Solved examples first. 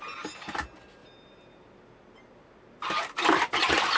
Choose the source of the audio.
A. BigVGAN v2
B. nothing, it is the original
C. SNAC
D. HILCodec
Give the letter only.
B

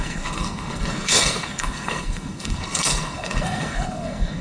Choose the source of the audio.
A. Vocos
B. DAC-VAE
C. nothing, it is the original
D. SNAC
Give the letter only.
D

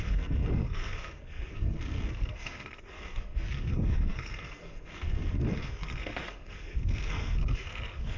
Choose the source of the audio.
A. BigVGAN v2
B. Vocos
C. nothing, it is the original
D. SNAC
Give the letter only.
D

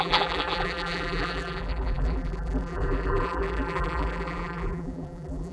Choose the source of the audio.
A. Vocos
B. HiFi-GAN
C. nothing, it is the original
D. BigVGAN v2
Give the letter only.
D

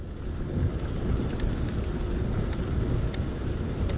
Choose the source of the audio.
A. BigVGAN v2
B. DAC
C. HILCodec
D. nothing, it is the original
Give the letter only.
D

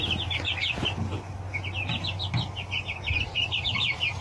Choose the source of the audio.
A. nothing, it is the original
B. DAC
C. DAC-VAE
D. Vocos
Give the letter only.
A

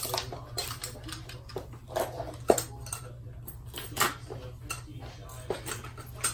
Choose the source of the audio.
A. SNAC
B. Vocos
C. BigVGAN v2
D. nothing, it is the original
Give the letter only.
D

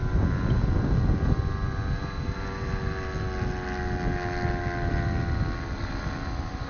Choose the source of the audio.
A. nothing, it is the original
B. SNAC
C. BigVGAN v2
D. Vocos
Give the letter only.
A